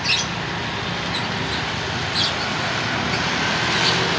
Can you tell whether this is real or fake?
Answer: real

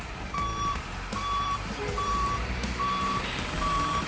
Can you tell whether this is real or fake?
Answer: fake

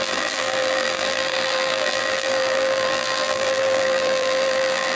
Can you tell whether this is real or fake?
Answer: fake